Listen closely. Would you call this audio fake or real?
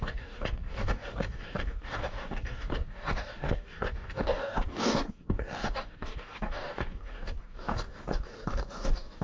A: fake